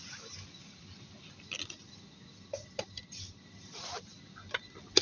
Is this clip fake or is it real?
real